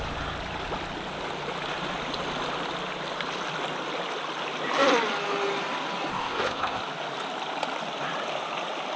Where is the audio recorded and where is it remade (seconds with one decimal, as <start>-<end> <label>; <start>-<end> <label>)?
0.0-6.1 recorded; 6.1-6.8 remade; 6.8-9.0 recorded